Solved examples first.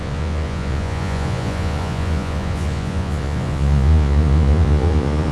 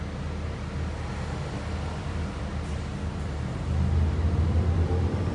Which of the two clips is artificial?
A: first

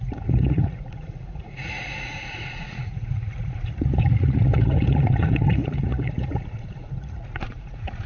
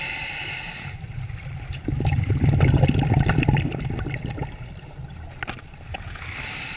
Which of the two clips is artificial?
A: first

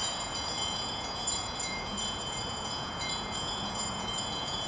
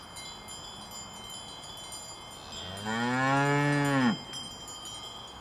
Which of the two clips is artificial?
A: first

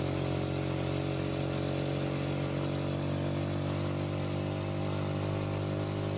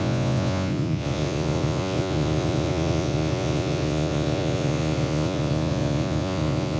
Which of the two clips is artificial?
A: second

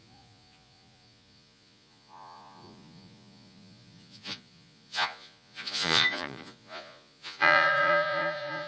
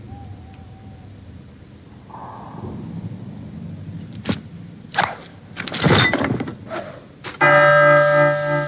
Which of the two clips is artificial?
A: first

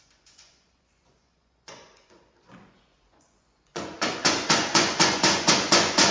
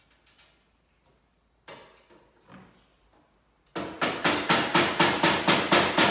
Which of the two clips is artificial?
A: first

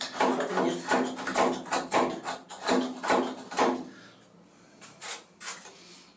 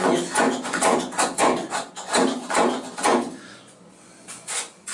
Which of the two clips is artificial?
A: second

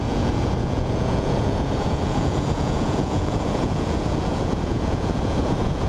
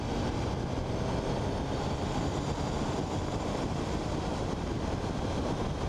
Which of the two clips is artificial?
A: first